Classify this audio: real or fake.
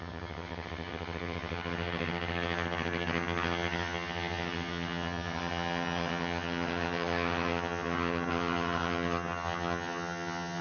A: fake